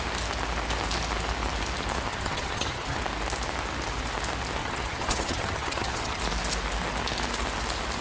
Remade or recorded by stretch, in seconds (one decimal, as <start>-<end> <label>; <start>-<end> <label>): 0.0-2.1 recorded; 2.1-3.0 remade; 3.0-4.6 recorded; 4.6-6.2 remade; 6.2-8.0 recorded